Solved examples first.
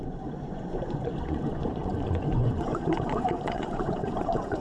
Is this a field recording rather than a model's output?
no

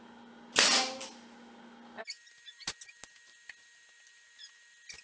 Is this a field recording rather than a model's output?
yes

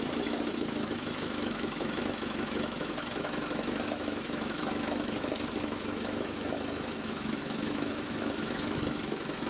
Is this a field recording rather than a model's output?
no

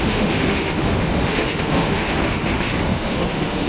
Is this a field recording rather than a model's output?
no